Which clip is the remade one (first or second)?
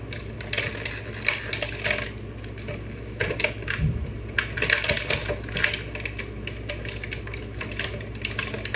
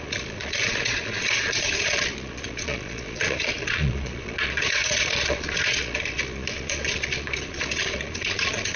second